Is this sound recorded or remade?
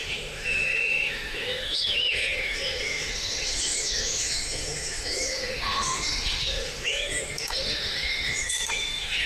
remade